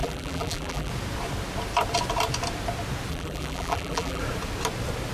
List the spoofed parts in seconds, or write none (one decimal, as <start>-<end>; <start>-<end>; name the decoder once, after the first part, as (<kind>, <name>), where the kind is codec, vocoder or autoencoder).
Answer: 0.0-0.9 (vocoder, BigVGAN v2); 3.1-4.2